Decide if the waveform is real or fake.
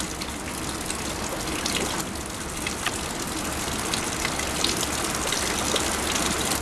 real